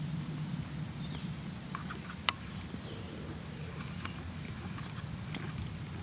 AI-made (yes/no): no